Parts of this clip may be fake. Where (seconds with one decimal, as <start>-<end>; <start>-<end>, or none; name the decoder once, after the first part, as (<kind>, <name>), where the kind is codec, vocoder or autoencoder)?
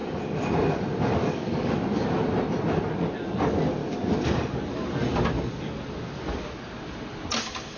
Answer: 1.2-1.7 (codec, DAC); 3.8-4.4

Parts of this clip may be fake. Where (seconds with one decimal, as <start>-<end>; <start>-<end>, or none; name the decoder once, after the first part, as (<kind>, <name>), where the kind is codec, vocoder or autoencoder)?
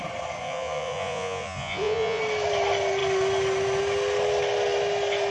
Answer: 0.4-2.2 (vocoder, Vocos)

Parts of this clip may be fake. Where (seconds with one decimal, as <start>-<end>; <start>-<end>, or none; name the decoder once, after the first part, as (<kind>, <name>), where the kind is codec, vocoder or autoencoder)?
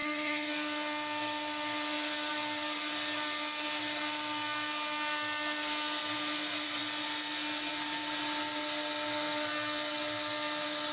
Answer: 0.0-0.5 (codec, SNAC)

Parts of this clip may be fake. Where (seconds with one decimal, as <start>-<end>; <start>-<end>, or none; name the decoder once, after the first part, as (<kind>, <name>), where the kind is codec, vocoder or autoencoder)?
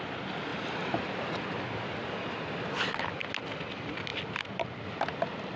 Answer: none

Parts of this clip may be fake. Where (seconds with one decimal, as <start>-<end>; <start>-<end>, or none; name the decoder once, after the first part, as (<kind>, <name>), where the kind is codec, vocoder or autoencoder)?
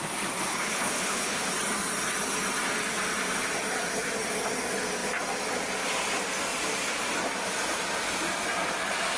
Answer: 0.5-1.5 (codec, HILCodec)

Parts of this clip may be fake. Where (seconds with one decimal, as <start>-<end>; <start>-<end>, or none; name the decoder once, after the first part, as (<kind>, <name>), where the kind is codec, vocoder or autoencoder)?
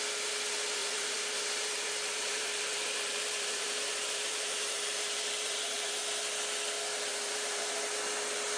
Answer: 0.8-5.9 (vocoder, BigVGAN v2); 7.1-7.7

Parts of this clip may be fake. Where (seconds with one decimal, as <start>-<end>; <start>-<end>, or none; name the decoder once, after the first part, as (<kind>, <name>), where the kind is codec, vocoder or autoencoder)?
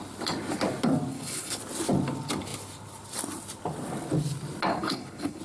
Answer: 1.1-1.6 (codec, HILCodec); 4.7-5.4